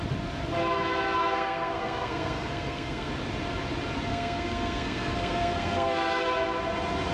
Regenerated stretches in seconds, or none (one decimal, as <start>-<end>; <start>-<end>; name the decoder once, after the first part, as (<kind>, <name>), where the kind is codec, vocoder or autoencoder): 1.2-3.1 (codec, SNAC); 4.1-6.2